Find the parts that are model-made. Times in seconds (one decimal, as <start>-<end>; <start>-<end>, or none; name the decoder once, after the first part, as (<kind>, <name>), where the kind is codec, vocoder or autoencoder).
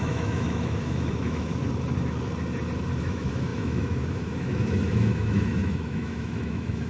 0.0-1.6 (autoencoder, DAC-VAE); 3.0-6.9